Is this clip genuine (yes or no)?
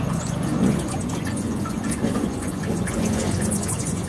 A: no